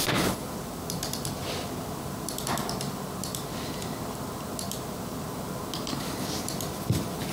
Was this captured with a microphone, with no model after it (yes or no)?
yes